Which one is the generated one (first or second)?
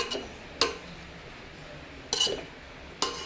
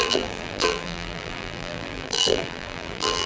second